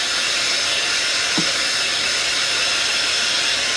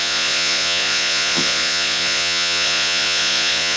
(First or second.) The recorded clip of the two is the first